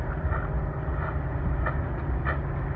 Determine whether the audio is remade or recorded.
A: recorded